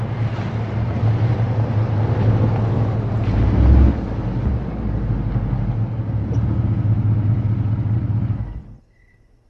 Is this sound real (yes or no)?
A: yes